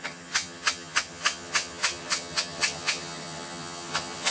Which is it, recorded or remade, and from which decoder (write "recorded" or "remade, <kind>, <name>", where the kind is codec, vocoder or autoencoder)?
remade, vocoder, HiFi-GAN